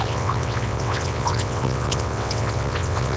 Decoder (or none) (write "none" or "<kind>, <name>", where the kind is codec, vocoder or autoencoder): vocoder, WaveNeXt